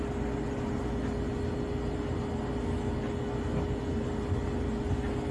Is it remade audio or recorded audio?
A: recorded